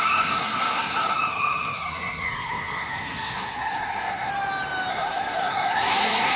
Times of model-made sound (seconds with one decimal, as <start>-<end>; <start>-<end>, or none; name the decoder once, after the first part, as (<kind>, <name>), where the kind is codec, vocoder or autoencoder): 0.0-4.3 (codec, SNAC); 4.9-6.4